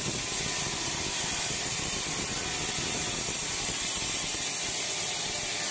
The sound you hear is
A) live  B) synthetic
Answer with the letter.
A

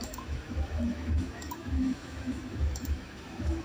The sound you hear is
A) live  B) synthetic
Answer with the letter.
B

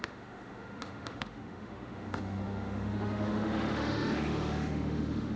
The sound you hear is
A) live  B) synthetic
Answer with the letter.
B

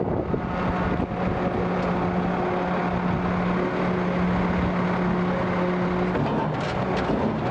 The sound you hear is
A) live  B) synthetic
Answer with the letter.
A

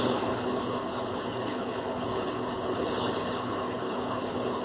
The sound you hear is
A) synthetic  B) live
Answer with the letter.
A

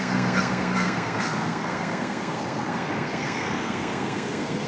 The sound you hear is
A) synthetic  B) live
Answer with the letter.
A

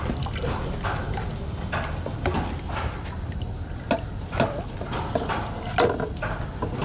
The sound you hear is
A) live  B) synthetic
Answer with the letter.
A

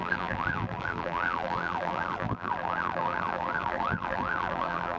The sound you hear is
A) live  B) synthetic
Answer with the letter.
B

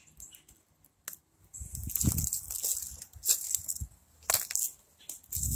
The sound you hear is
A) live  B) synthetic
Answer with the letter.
A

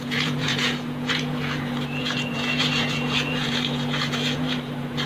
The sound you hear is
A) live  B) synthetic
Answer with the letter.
B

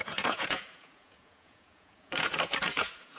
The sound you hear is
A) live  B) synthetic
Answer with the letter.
B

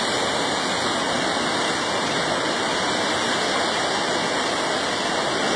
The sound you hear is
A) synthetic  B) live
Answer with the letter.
B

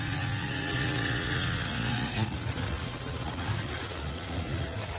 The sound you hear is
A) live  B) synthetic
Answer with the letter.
B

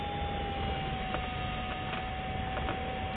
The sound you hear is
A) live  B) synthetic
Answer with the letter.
A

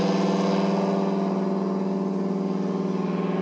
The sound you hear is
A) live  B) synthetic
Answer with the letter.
A